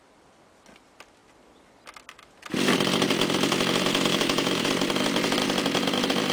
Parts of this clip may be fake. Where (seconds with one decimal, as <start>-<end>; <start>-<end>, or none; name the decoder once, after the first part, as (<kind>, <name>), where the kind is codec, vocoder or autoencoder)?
4.1-4.7 (autoencoder, DAC-VAE)

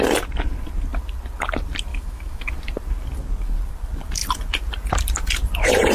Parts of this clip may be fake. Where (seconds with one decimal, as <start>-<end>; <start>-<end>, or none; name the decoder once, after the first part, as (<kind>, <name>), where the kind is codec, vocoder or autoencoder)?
1.9-2.5 (autoencoder, DAC-VAE)

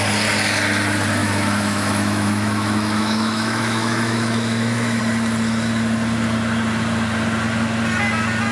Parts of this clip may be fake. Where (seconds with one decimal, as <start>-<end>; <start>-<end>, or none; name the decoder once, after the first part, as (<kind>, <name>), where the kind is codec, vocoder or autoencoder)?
1.2-5.0 (autoencoder, DAC-VAE)

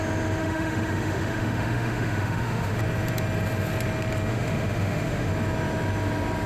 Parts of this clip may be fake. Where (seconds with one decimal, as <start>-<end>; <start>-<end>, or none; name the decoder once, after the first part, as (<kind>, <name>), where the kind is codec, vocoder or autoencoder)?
0.4-2.8 (autoencoder, DAC-VAE); 4.3-5.3

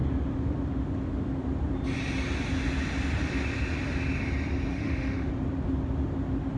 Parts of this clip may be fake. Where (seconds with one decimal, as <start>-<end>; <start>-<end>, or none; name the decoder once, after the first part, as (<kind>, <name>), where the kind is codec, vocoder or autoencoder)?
4.7-5.3 (autoencoder, DAC-VAE)

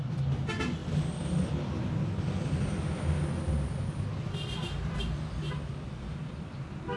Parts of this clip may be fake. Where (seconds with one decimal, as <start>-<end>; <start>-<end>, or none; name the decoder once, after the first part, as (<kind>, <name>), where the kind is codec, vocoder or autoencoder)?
none

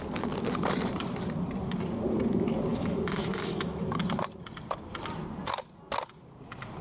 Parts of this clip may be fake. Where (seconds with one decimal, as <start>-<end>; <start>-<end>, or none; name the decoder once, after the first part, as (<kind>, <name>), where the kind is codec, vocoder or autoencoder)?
2.7-4.0 (autoencoder, DAC-VAE)

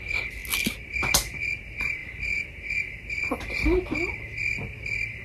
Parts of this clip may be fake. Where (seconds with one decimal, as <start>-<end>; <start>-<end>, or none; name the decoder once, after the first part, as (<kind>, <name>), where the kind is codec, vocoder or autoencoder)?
none